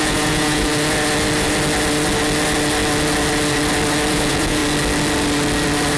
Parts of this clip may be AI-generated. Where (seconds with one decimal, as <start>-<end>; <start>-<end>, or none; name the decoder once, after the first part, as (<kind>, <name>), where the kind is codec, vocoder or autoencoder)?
0.0-0.7 (vocoder, Vocos); 4.1-4.6